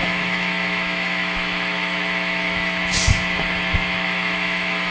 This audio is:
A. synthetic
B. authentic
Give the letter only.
A